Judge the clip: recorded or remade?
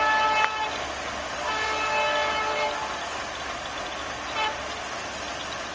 recorded